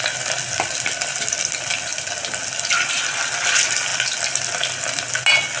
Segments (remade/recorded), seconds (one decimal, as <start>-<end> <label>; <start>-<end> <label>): 0.0-5.6 recorded